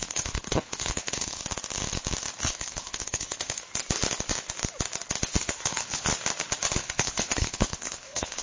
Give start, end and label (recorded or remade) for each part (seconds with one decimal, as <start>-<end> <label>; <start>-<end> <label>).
0.0-1.4 remade; 1.4-2.4 recorded; 2.4-3.6 remade; 3.6-5.4 recorded; 5.4-6.1 remade; 6.1-6.8 recorded; 6.8-8.4 remade